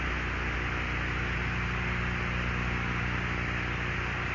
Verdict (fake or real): real